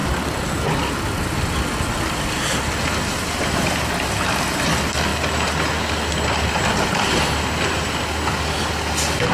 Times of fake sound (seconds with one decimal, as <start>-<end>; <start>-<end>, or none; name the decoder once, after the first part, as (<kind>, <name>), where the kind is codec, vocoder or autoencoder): none